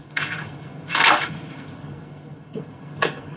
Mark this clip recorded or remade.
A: remade